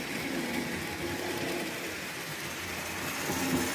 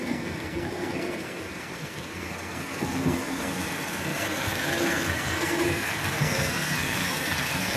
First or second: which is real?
first